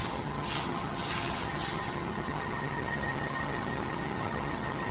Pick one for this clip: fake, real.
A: fake